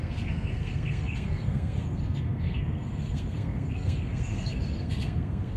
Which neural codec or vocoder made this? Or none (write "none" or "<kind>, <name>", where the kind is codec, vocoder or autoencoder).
codec, SNAC